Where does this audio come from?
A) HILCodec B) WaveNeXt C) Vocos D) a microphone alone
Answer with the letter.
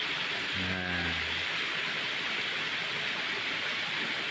D